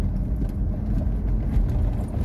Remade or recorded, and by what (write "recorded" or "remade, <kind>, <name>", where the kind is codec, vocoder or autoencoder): recorded